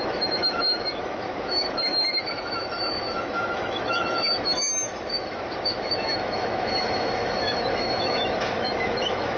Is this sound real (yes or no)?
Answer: no